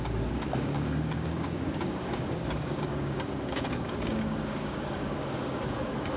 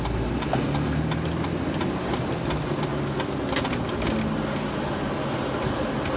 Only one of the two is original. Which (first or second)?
second